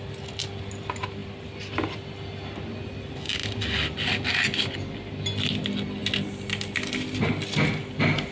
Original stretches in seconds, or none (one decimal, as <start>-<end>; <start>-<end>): 0.0-8.3